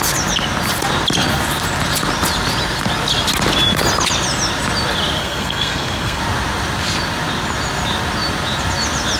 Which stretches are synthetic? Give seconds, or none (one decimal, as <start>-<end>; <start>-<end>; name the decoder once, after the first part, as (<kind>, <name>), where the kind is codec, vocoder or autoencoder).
5.2-6.2 (codec, SNAC)